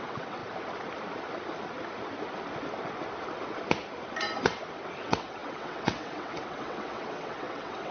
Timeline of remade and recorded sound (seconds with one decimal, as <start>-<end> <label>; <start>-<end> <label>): 0.0-0.4 remade; 0.4-5.0 recorded; 5.0-7.9 remade